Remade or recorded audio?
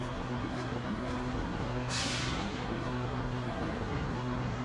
remade